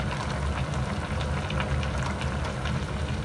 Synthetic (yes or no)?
no